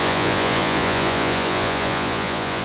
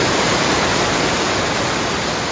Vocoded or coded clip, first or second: first